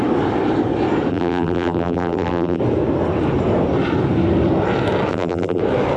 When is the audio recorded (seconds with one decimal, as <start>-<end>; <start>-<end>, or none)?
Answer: 0.0-1.1; 2.6-5.1; 5.6-6.0